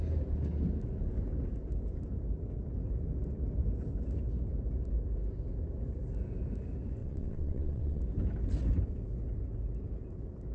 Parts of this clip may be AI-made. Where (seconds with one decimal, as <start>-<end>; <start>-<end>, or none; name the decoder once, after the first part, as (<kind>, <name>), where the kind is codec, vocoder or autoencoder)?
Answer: 7.0-8.0 (vocoder, WaveNeXt)